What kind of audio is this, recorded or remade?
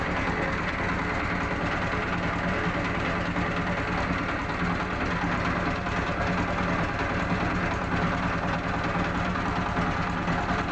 recorded